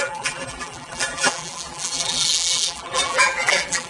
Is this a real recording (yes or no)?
no